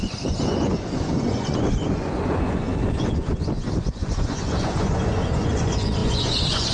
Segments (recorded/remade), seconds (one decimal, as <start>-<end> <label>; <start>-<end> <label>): 0.0-6.7 remade

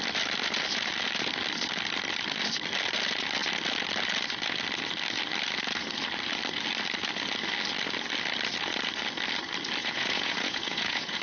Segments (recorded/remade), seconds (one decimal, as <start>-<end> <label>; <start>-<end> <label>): 0.0-9.8 recorded; 9.8-11.2 remade

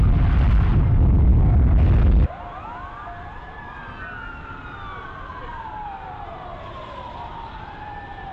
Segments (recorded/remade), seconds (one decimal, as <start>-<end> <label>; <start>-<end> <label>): 0.0-5.4 recorded; 5.4-6.4 remade; 6.4-8.3 recorded